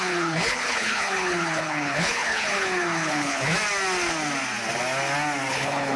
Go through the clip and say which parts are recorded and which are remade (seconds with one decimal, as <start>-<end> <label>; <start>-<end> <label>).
0.0-3.5 remade; 3.5-5.5 recorded; 5.5-6.0 remade